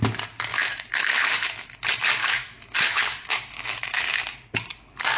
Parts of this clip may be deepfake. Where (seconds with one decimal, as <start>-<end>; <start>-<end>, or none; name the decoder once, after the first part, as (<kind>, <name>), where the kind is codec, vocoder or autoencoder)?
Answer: 0.5-1.8 (autoencoder, DAC-VAE); 2.2-4.2